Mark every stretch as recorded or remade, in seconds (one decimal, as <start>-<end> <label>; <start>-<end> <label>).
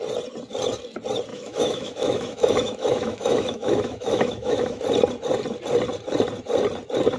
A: 0.0-1.3 recorded; 1.3-4.8 remade; 4.8-7.2 recorded